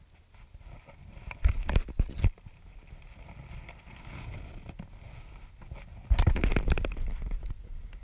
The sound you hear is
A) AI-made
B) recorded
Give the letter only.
B